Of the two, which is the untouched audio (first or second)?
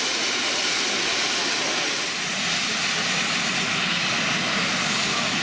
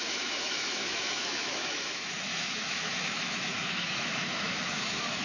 first